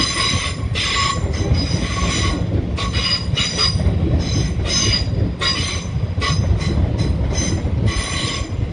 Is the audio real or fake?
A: real